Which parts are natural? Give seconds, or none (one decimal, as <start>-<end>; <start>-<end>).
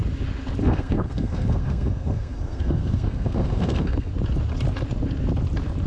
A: 0.0-0.6; 4.1-5.9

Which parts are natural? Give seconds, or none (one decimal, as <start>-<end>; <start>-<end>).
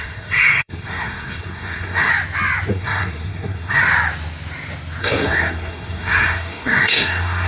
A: 2.1-2.7; 3.8-5.0